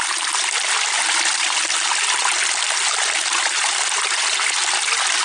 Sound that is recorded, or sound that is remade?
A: recorded